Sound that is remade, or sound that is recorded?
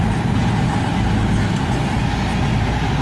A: recorded